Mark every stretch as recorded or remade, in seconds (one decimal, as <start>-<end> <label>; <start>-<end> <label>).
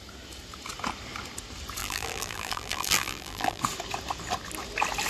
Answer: 0.0-1.8 recorded; 1.8-3.6 remade; 3.6-5.1 recorded